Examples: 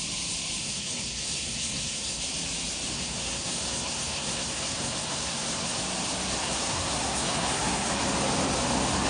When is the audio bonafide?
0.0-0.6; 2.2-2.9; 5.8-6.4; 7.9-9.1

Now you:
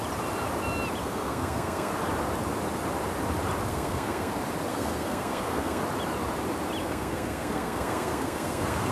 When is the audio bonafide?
0.0-1.0; 1.9-3.7; 4.3-4.7; 5.8-6.8